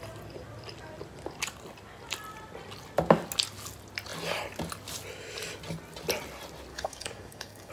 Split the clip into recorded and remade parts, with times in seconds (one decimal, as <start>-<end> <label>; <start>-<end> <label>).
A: 0.0-6.7 recorded; 6.7-7.7 remade